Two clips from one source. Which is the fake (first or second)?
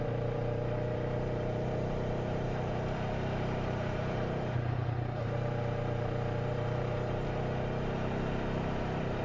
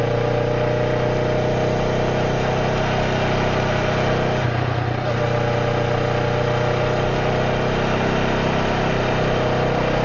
first